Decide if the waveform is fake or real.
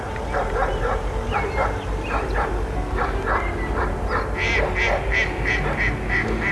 real